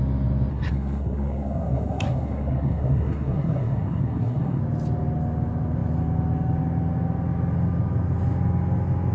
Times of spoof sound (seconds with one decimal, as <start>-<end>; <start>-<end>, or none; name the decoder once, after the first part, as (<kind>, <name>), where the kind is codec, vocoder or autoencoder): 0.5-4.6 (codec, SNAC)